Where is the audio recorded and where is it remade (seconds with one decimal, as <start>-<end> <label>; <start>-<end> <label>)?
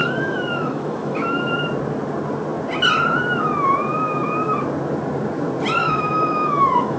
0.0-1.5 remade; 1.5-5.8 recorded; 5.8-7.0 remade